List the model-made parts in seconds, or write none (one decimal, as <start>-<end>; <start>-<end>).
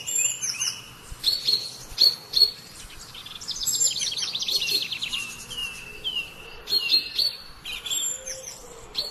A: 0.0-5.6